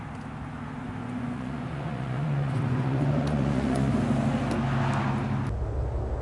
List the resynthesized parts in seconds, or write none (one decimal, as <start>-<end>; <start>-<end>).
1.0-3.9